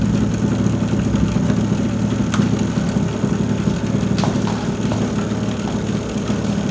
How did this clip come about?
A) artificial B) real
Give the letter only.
B